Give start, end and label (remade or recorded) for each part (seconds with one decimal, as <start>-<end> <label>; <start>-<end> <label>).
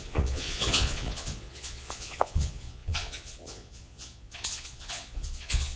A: 0.0-5.8 remade